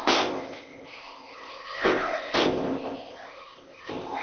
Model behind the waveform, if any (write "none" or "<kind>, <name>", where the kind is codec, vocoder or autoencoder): codec, ZipCodec